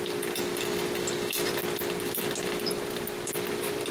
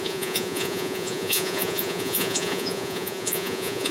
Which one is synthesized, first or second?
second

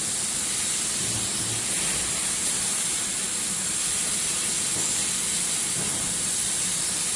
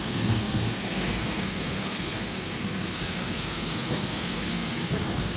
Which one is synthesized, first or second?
second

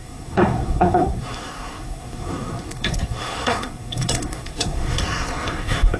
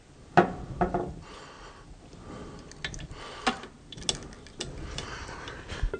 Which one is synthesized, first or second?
first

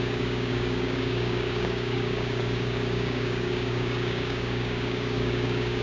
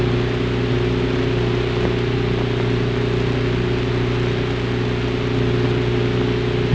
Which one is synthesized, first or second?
first